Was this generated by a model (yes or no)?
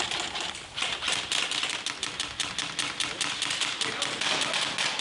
no